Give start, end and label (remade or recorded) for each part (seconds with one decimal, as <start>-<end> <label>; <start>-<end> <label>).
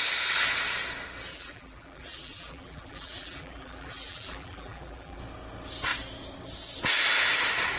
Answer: 0.0-1.3 recorded; 1.3-5.2 remade; 5.2-7.8 recorded